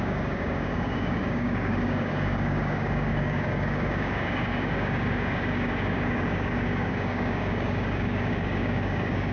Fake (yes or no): yes